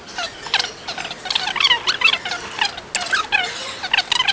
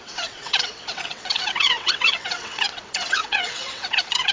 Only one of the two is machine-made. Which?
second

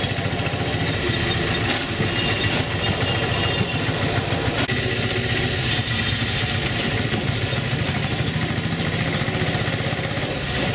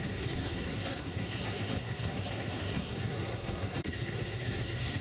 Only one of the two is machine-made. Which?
second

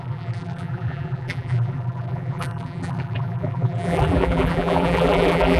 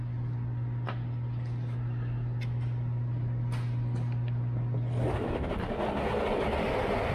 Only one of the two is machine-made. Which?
first